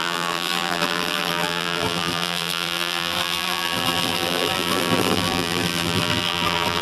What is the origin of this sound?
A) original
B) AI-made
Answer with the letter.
B